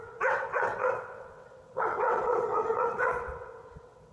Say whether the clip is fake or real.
fake